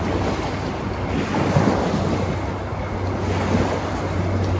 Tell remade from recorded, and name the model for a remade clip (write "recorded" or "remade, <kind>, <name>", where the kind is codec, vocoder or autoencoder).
recorded